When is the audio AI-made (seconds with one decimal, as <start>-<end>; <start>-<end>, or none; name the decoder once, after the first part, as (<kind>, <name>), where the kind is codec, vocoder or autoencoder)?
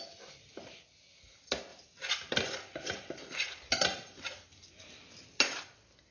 1.7-5.4 (vocoder, BigVGAN v2)